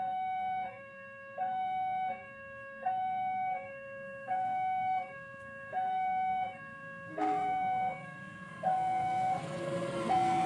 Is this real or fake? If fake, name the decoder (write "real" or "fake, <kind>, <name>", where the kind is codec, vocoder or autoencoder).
fake, codec, SNAC